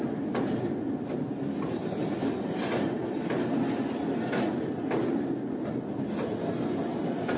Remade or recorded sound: recorded